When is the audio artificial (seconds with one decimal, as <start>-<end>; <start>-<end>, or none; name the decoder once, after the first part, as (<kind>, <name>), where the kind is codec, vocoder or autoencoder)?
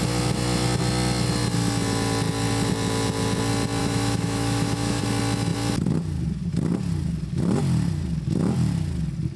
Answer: 3.8-5.0 (autoencoder, DAC-VAE)